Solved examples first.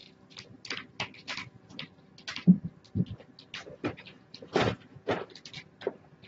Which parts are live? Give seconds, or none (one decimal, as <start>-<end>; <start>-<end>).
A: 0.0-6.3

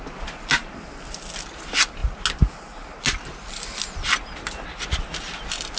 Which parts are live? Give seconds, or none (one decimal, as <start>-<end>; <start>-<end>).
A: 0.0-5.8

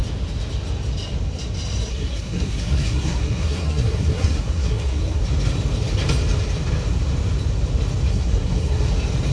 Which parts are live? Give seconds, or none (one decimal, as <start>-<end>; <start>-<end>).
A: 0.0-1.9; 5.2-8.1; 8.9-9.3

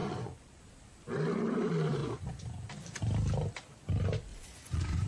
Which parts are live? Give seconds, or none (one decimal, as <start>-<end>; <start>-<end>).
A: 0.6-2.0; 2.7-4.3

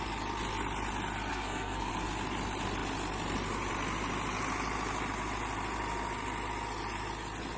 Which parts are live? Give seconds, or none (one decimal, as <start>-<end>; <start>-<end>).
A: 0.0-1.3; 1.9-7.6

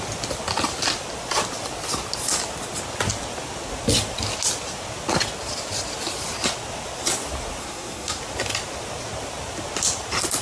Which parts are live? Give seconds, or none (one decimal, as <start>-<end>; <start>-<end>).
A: 0.0-7.6; 8.2-10.4

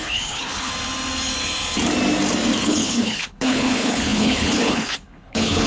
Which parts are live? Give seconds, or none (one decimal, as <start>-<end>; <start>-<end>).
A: 0.7-2.6

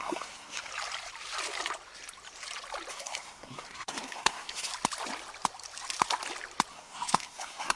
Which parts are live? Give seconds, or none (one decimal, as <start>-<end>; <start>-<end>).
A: 0.7-2.9; 4.7-6.7